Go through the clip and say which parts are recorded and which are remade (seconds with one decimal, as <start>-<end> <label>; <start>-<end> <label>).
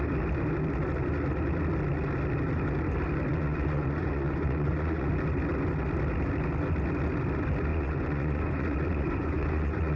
0.0-3.3 recorded; 3.3-5.1 remade; 5.1-7.7 recorded; 7.7-10.0 remade